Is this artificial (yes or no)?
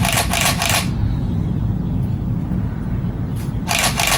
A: no